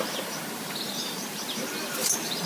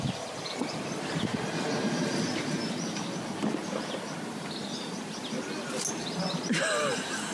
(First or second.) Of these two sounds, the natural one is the second